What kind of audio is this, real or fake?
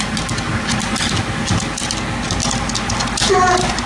real